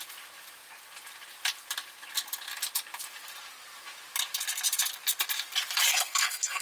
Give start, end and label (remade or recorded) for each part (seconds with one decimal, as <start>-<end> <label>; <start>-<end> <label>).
0.0-5.9 recorded; 5.9-6.6 remade